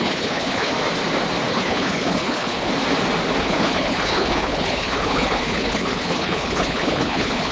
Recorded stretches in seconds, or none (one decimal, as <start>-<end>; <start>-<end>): 0.7-1.5; 2.7-3.4